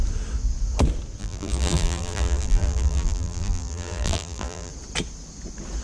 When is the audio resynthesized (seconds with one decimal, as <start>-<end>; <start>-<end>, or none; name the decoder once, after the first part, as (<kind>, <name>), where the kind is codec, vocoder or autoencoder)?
1.2-4.7 (vocoder, BigVGAN v2)